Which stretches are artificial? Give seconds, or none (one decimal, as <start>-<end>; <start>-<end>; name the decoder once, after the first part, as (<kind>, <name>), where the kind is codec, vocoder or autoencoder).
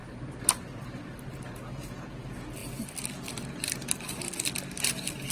0.0-1.5 (vocoder, BigVGAN v2); 2.6-4.1